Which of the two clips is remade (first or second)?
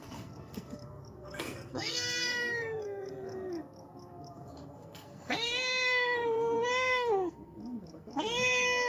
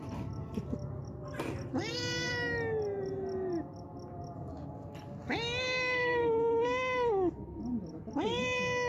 first